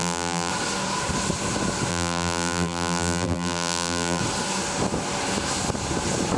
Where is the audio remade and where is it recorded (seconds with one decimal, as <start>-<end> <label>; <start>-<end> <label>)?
0.0-0.5 remade; 0.5-1.9 recorded; 1.9-4.2 remade; 4.2-6.4 recorded